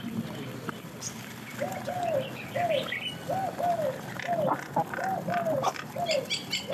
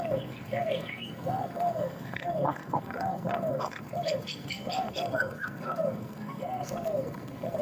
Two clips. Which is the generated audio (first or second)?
second